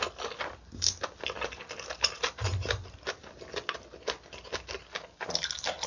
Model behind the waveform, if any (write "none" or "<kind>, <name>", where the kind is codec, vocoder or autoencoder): none